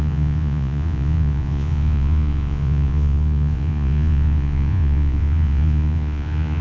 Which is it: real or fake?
fake